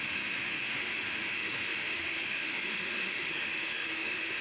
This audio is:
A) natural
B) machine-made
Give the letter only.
B